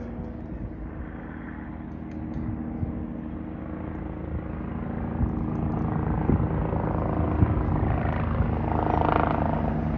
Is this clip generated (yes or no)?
no